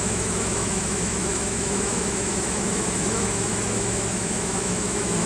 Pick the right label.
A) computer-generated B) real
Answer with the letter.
A